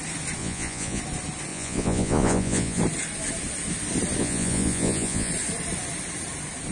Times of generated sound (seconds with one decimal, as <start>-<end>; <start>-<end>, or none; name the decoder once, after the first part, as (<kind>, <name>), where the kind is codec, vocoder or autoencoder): 0.4-1.0 (vocoder, Vocos); 1.5-2.8; 4.2-5.3